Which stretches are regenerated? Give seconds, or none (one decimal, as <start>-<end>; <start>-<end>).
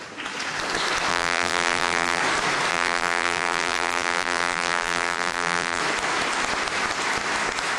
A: 1.1-2.2; 2.7-5.8